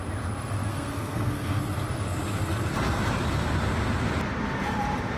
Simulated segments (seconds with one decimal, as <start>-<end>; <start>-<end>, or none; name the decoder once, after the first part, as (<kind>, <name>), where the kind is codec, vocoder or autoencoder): 0.7-1.6 (codec, SNAC)